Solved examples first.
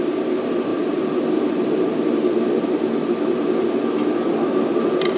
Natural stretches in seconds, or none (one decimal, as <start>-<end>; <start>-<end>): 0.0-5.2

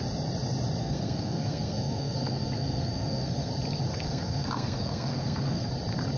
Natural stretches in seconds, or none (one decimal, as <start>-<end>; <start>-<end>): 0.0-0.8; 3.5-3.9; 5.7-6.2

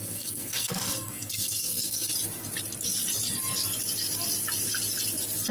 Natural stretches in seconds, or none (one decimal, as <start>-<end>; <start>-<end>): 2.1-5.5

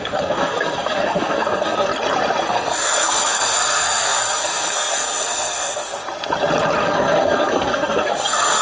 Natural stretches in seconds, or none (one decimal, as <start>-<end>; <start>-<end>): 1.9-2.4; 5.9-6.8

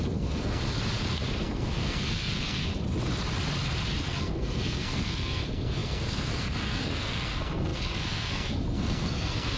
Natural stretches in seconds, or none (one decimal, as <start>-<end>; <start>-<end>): 0.6-1.4; 2.7-4.0